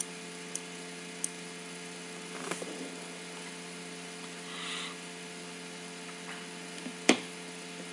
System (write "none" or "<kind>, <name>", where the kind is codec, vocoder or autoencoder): none